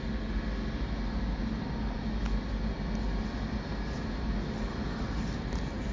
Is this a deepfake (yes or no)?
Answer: no